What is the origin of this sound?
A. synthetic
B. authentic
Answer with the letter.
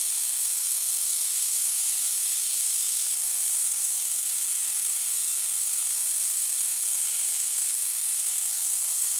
A